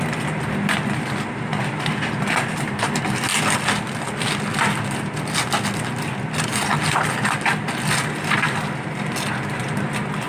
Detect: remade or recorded recorded